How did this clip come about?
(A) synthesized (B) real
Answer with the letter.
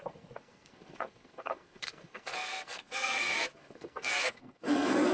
A